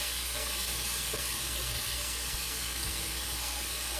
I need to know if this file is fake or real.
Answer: fake